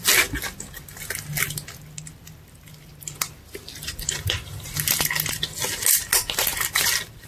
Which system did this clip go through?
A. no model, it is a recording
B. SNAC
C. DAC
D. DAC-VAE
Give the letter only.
A